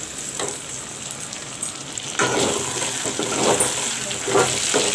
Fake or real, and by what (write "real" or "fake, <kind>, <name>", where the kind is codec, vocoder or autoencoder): real